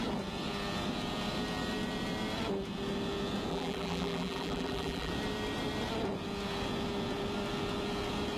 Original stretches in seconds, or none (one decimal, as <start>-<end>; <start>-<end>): 0.0-3.5; 5.1-8.4